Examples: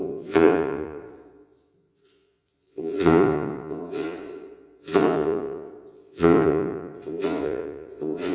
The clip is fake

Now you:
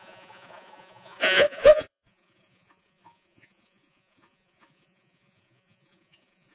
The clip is fake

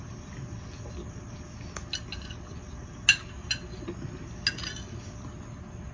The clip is real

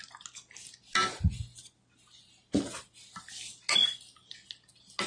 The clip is real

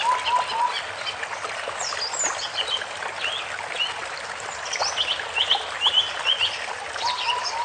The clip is real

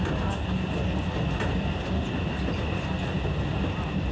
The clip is real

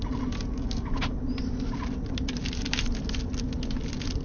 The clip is real